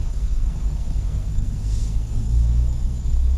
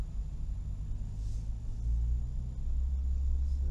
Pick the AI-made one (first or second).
first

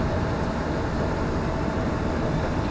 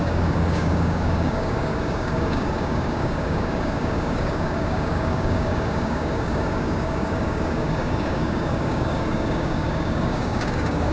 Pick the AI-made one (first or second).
second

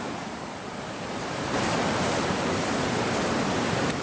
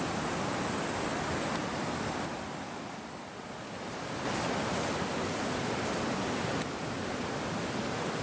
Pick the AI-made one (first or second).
first